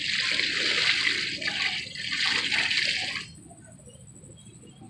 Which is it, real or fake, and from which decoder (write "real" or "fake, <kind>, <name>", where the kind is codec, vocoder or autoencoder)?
real